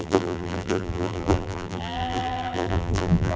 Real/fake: fake